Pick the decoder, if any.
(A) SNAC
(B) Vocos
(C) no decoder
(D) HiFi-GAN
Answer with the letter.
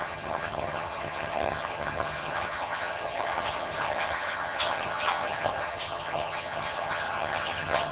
D